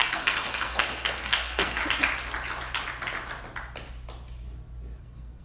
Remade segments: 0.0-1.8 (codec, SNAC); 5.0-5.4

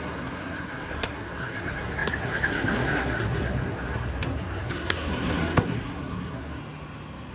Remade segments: 0.0-6.6 (codec, SNAC)

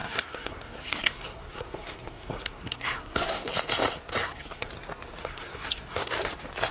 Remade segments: 0.0-3.5 (codec, SNAC); 4.2-4.7; 5.2-6.3